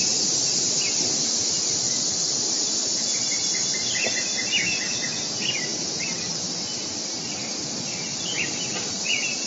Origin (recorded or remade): recorded